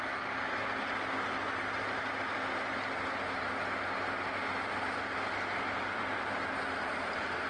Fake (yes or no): no